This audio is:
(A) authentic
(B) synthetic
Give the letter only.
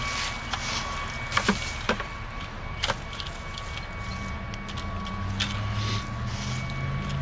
A